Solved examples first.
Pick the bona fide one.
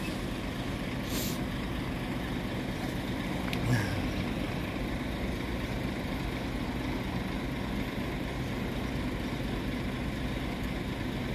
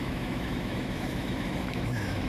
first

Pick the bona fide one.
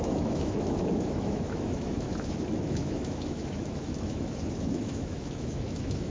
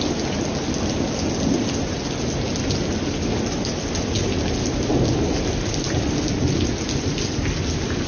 second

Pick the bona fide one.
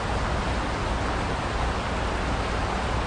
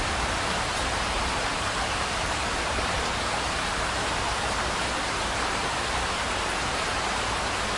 first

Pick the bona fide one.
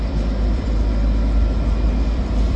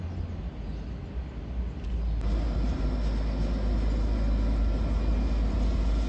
second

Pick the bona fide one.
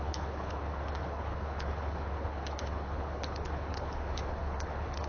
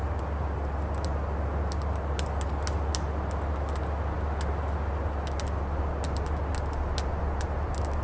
second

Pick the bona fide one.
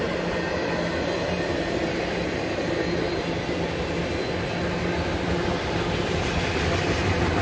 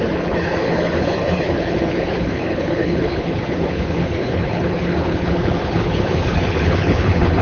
first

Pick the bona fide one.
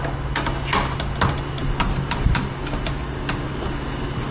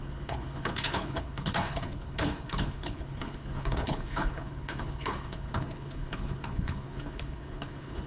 first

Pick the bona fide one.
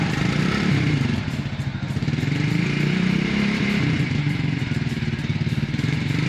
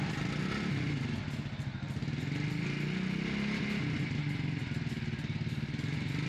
second